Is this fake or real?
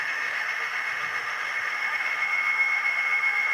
fake